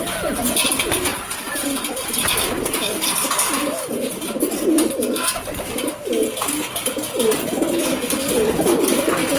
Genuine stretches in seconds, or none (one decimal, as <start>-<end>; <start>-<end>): 0.0-9.4